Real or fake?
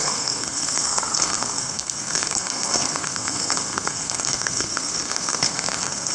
fake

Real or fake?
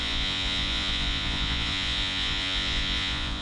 fake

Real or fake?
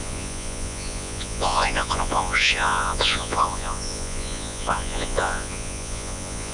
fake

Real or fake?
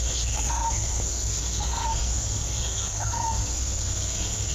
fake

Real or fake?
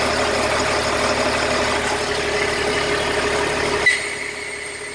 real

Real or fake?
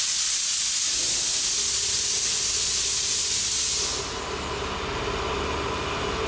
real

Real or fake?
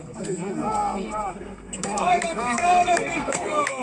fake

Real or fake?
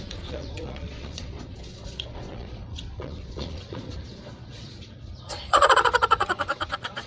fake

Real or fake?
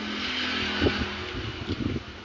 real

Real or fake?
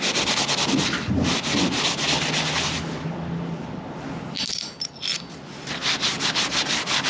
real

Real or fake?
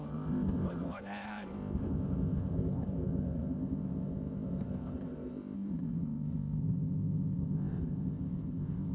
fake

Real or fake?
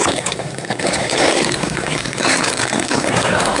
fake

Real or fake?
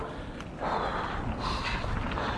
real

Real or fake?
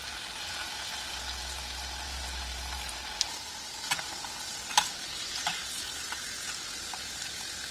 real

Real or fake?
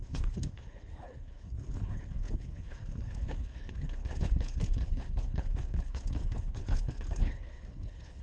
fake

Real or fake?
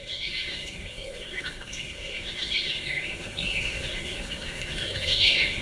fake